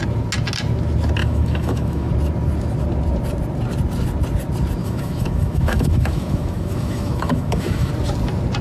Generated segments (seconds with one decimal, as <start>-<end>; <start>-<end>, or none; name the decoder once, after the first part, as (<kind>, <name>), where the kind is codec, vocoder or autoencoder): 1.2-2.1 (autoencoder, DAC-VAE); 4.8-7.9